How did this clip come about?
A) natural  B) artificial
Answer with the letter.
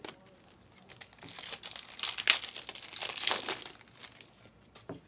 A